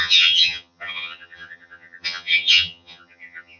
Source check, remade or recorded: remade